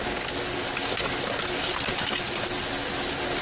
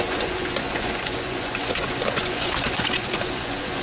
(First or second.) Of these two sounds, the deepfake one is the second